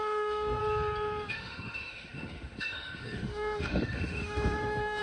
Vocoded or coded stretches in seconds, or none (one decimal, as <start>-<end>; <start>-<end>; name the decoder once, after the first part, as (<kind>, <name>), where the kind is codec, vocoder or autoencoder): 0.0-0.6 (autoencoder, DAC-VAE); 1.3-5.0